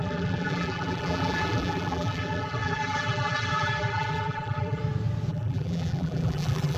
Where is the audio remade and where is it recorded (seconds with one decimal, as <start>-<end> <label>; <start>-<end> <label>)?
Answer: 0.0-4.8 remade; 4.8-5.3 recorded; 5.3-6.8 remade